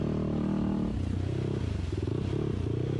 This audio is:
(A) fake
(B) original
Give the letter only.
B